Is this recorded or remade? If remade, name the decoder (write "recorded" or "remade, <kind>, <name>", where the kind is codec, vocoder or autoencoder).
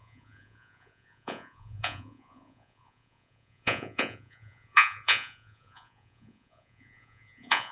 remade, vocoder, Vocos